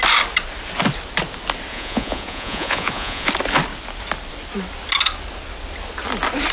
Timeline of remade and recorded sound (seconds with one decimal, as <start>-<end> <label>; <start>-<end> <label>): 0.0-1.7 recorded; 1.7-3.3 remade; 3.3-6.5 recorded